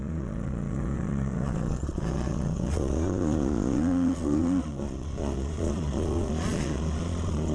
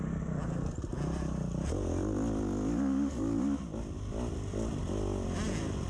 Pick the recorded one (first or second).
second